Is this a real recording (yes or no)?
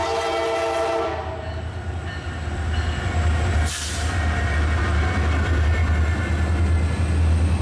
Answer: yes